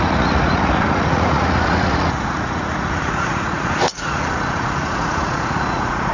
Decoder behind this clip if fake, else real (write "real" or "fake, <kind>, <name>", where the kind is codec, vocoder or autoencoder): fake, vocoder, Vocos